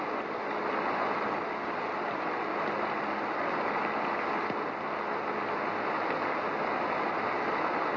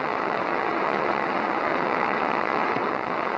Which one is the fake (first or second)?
second